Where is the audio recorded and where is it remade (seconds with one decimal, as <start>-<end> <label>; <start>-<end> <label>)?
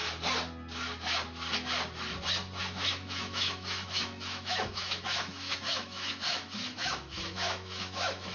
0.0-2.6 recorded; 2.6-8.3 remade